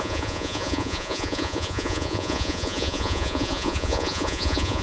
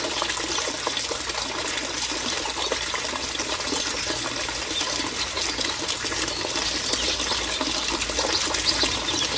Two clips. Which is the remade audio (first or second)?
first